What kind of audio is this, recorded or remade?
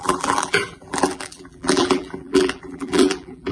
remade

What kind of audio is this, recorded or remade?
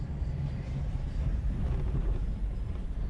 remade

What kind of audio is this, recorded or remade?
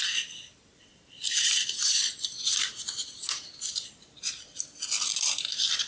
recorded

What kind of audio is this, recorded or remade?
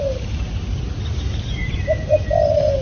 recorded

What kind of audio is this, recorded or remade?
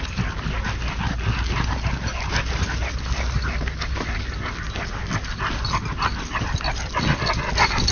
recorded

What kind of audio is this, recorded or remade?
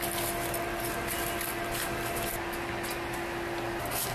recorded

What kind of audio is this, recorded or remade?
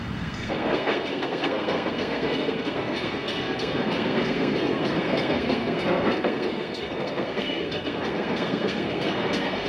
remade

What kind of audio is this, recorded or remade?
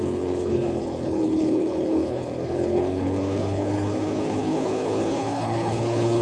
remade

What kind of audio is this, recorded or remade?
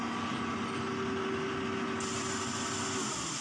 recorded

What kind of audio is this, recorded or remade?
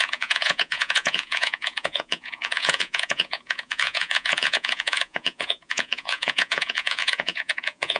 remade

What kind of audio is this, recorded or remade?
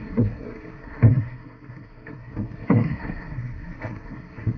remade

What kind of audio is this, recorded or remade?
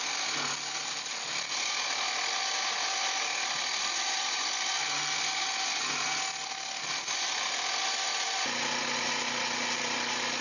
recorded